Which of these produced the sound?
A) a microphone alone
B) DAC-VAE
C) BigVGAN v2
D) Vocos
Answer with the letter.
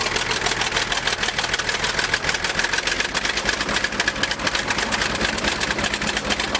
A